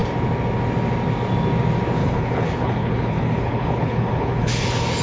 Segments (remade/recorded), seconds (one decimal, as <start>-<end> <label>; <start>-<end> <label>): 0.0-2.0 recorded; 2.0-5.0 remade